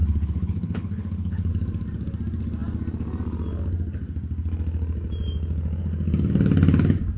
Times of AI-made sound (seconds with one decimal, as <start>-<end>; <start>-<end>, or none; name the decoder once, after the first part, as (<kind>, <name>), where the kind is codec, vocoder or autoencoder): 0.0-1.5 (codec, HILCodec)